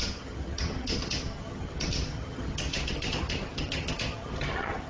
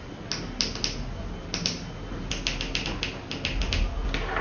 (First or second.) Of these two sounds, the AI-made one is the first